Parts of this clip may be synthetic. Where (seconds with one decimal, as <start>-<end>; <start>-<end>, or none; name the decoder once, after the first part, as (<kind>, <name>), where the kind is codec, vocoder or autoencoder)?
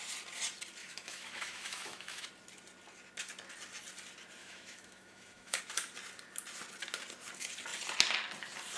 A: 0.8-2.3 (autoencoder, DAC-VAE); 4.4-5.6